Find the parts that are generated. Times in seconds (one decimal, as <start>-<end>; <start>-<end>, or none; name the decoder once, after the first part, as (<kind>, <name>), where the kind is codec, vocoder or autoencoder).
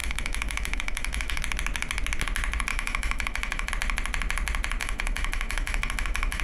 0.0-1.4 (autoencoder, DAC-VAE); 2.7-3.7; 4.8-6.4